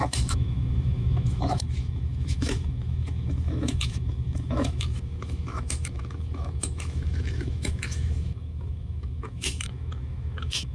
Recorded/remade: remade